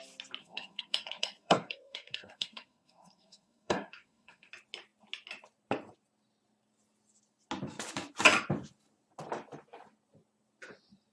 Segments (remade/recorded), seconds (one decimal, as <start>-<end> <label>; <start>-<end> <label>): 0.0-0.4 recorded; 0.4-4.5 remade; 4.5-11.1 recorded